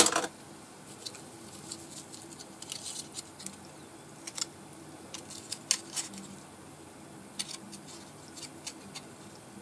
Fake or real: real